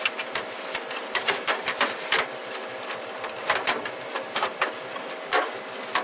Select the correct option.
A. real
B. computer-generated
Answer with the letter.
A